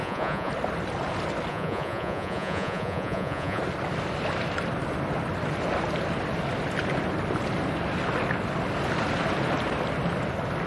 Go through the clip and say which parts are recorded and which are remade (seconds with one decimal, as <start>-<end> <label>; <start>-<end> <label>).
0.0-0.5 remade; 0.5-1.5 recorded; 1.5-3.6 remade; 3.6-10.7 recorded

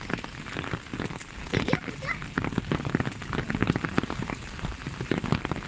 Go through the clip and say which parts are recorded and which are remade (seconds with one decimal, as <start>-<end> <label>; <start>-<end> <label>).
0.0-1.4 recorded; 1.4-2.1 remade; 2.1-3.6 recorded; 3.6-5.3 remade; 5.3-5.7 recorded

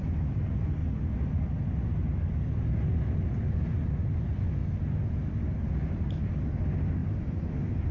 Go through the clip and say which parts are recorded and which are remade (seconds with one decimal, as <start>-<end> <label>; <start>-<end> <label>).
0.0-7.9 recorded

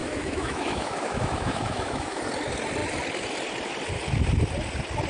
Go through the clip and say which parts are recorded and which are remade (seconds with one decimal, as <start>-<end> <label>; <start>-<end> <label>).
0.0-2.2 remade; 2.2-5.1 recorded